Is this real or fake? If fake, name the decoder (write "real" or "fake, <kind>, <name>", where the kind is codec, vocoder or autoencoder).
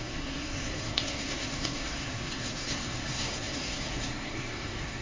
fake, codec, SNAC